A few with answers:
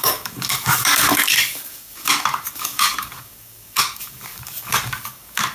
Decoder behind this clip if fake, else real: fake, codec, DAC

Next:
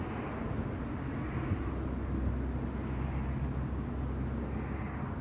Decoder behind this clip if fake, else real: real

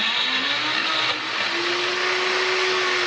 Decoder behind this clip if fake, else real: real